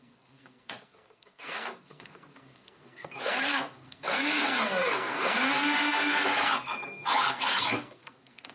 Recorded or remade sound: remade